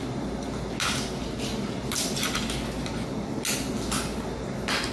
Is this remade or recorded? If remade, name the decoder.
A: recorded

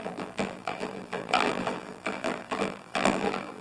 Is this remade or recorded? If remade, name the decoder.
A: remade, vocoder, BigVGAN v2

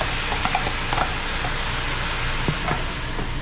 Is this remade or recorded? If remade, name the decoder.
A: recorded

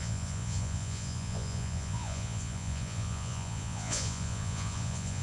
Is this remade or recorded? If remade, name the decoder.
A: remade, vocoder, Vocos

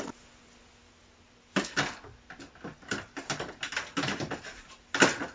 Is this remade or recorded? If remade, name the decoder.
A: recorded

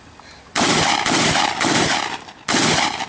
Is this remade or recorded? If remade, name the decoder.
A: recorded